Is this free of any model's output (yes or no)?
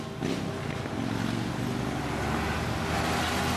yes